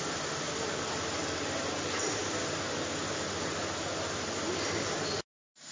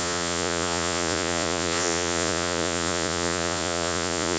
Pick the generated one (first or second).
second